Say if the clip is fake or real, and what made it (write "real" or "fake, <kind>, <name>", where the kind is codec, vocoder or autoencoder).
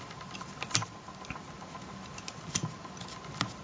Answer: fake, vocoder, BigVGAN v2